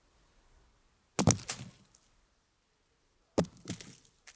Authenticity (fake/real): real